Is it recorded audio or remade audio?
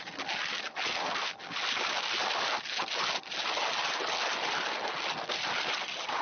recorded